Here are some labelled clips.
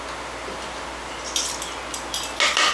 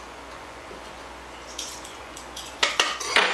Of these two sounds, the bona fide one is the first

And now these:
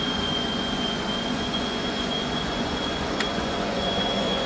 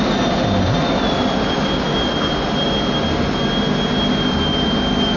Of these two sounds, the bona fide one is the second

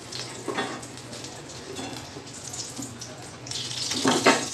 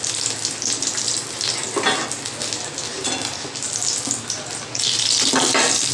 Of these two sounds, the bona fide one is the second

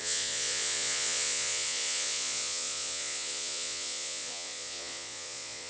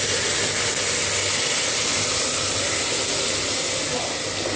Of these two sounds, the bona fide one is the second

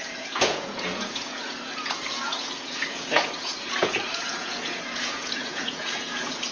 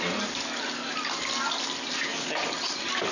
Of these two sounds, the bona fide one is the second